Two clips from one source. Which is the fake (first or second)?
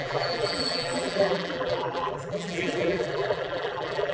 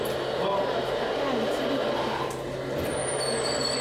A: first